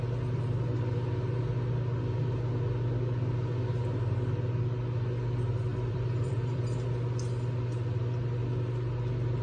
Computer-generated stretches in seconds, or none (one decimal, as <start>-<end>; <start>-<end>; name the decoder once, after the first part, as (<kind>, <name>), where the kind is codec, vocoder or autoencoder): 5.7-6.6 (vocoder, BigVGAN v2)